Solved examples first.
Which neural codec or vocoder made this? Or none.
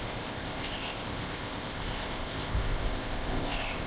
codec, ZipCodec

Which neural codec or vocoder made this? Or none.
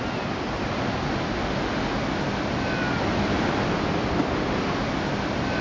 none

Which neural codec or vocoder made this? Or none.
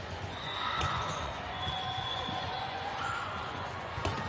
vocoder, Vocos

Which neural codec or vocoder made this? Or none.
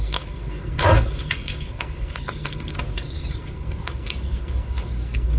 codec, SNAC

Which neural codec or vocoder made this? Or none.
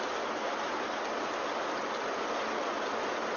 none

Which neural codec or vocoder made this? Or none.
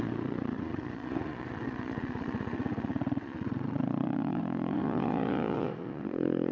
vocoder, Vocos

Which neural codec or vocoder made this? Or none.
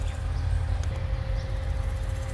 none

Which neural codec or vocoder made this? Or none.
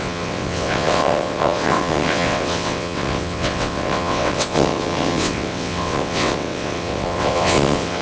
vocoder, WaveNeXt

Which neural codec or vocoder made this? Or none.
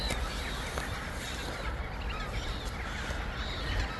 none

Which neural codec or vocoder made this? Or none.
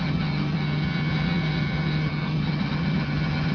vocoder, HiFi-GAN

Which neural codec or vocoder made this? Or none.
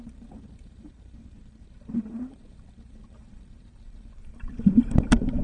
vocoder, BigVGAN v2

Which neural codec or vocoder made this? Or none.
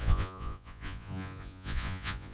vocoder, Vocos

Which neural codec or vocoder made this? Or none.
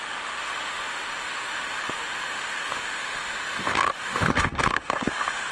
autoencoder, DAC-VAE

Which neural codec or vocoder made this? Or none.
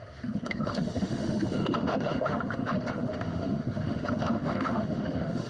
autoencoder, DAC-VAE